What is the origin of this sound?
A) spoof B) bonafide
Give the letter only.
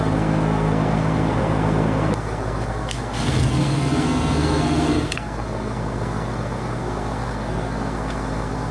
A